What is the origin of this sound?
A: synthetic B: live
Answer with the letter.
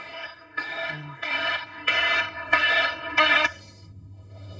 A